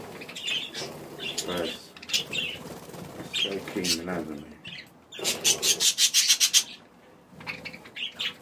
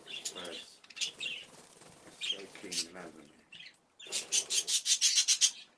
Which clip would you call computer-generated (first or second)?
second